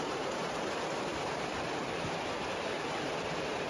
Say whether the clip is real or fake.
fake